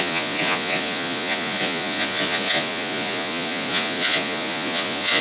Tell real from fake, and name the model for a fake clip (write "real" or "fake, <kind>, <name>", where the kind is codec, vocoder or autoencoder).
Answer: fake, vocoder, Vocos